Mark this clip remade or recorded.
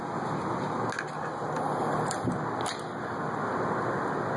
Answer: recorded